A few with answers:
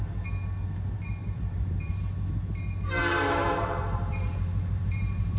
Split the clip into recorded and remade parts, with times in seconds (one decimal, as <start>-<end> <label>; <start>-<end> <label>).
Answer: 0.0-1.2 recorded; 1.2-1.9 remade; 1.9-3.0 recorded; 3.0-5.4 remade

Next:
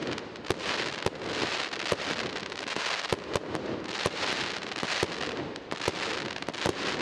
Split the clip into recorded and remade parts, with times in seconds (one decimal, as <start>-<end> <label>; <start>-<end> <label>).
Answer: 0.0-7.0 recorded

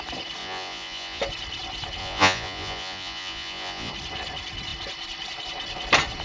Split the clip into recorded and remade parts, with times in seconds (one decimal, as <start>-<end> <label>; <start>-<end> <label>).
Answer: 0.0-0.4 recorded; 0.4-1.2 remade; 1.2-2.0 recorded; 2.0-3.9 remade; 3.9-6.2 recorded

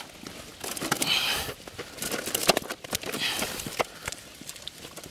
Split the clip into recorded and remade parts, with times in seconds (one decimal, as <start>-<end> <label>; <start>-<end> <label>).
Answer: 0.0-0.5 recorded; 0.5-1.5 remade; 1.5-2.4 recorded; 2.4-4.6 remade; 4.6-5.1 recorded

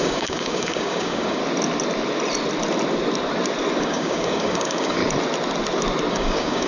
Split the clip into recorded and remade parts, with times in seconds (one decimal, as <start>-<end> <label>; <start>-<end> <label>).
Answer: 0.0-1.4 remade; 1.4-3.8 recorded; 3.8-5.0 remade; 5.0-6.1 recorded; 6.1-6.7 remade